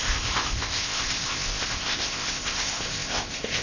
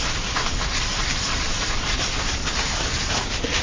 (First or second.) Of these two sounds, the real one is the second